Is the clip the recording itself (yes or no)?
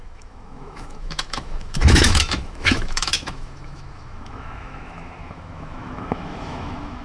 no